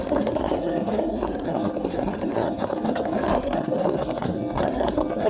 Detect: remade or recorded remade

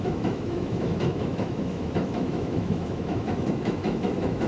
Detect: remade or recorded remade